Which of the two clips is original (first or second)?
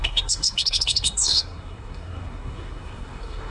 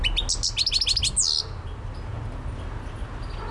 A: second